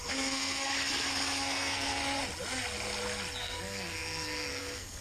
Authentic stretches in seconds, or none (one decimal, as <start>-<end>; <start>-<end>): 0.7-1.4; 2.0-3.4